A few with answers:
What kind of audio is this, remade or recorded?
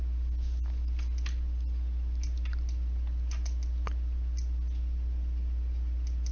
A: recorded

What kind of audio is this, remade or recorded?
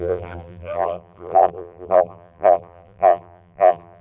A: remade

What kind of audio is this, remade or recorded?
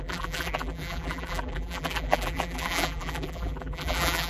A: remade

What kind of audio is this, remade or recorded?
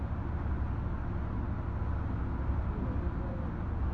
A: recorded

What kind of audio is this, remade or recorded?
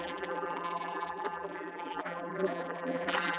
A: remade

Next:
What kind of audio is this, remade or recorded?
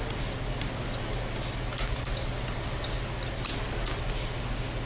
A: recorded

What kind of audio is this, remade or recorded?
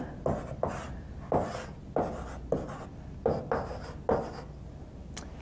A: recorded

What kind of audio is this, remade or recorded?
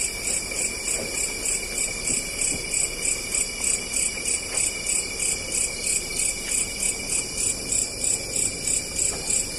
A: recorded